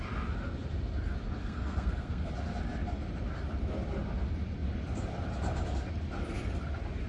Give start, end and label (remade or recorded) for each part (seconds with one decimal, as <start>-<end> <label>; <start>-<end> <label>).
0.0-1.4 recorded; 1.4-2.3 remade; 2.3-7.1 recorded